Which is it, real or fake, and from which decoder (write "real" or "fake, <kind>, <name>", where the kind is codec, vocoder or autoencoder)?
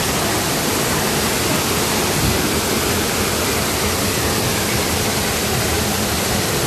real